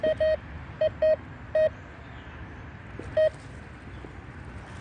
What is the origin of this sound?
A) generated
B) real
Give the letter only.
B